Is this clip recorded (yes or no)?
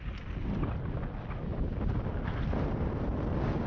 yes